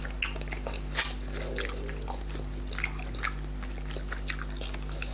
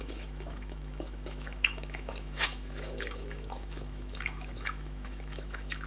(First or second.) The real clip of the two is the first